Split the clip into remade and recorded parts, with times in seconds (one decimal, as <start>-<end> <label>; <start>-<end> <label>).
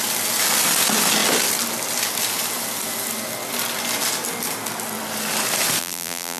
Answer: 0.0-5.8 recorded; 5.8-6.4 remade